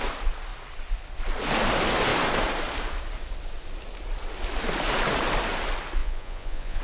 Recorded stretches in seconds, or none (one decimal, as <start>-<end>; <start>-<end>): 0.0-6.0